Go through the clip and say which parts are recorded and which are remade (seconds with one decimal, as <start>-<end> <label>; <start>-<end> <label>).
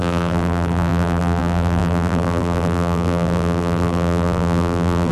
0.0-5.1 remade